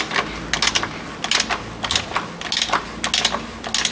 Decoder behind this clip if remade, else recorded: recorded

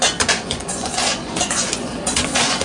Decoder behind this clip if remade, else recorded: remade, vocoder, Vocos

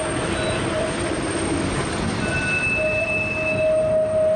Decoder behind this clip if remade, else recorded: recorded